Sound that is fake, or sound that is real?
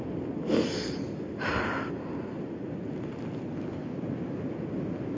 real